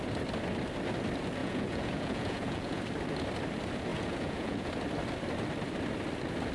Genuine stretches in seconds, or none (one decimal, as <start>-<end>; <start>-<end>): 0.0-1.4; 2.8-3.9; 4.7-6.5